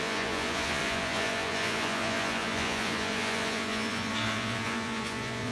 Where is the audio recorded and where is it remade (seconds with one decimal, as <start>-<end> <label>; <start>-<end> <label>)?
0.0-5.5 remade